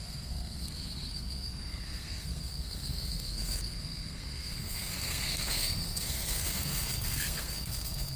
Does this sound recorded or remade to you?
remade